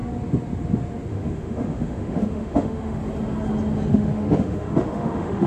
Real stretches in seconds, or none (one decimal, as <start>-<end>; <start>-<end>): 0.0-1.1; 3.0-3.9